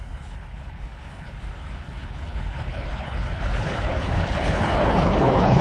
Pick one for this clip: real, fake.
fake